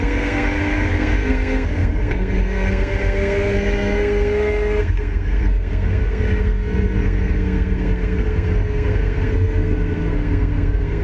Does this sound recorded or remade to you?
remade